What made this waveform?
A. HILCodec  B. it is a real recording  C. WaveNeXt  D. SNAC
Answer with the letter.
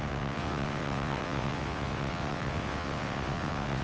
C